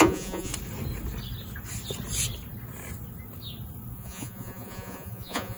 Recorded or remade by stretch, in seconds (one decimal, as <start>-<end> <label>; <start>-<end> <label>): 0.0-0.5 remade; 0.5-3.9 recorded; 3.9-5.6 remade